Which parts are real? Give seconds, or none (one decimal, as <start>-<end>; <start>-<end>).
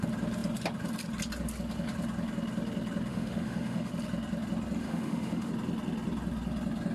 0.0-3.1; 3.9-4.8; 5.5-6.9